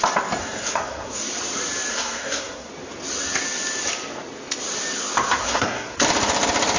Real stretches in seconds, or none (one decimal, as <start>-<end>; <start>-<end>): 0.0-0.4; 1.2-1.9; 2.7-5.4; 6.0-6.8